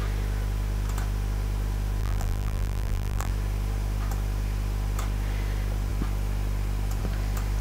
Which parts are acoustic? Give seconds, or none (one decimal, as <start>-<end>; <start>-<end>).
0.0-2.0; 3.3-7.6